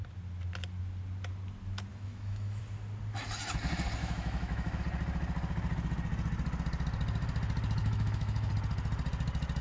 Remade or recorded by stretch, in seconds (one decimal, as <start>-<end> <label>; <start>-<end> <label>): 0.0-1.9 recorded; 1.9-2.6 remade; 2.6-4.0 recorded; 4.0-4.8 remade; 4.8-7.8 recorded; 7.8-8.5 remade; 8.5-9.6 recorded